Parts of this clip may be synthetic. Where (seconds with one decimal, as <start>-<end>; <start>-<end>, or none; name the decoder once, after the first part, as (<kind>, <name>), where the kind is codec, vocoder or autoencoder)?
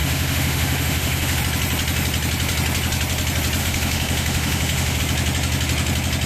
0.0-1.4 (autoencoder, DAC-VAE); 3.6-5.0